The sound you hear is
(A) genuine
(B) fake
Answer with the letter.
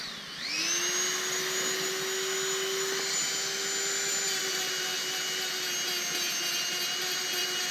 A